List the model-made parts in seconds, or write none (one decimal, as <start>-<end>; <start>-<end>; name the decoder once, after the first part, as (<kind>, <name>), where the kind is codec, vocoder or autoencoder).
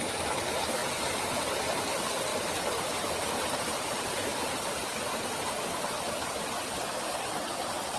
2.3-3.0 (vocoder, BigVGAN v2)